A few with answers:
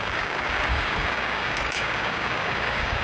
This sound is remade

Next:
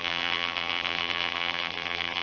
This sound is remade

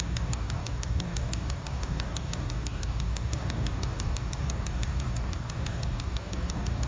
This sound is remade